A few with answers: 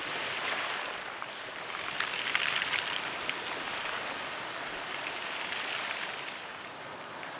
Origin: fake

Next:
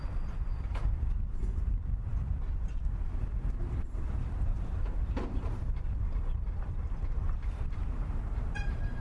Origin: fake